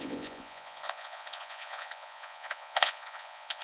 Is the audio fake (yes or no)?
yes